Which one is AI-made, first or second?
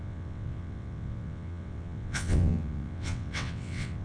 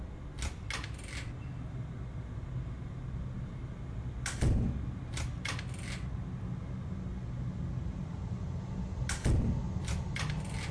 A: first